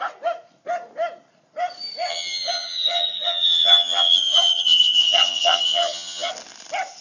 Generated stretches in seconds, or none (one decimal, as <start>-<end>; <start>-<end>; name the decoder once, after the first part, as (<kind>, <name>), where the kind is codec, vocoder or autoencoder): 2.1-6.3 (vocoder, HiFi-GAN)